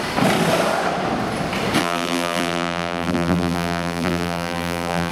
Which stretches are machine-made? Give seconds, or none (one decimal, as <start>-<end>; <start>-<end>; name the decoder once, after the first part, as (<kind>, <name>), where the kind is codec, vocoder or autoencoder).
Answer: 1.8-5.1 (vocoder, BigVGAN v2)